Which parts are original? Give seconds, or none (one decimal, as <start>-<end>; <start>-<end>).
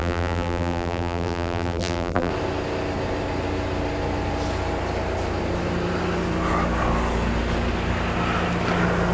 2.3-9.1